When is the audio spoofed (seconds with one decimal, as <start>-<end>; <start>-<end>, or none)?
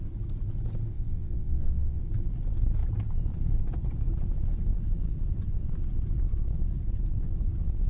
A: 0.9-2.0